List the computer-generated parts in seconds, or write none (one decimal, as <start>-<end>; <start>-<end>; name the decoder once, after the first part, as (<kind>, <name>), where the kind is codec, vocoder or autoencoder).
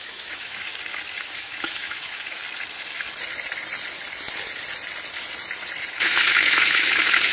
0.0-0.7 (autoencoder, DAC-VAE); 1.2-2.4; 5.9-7.3